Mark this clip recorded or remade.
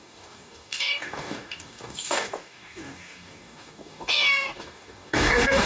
remade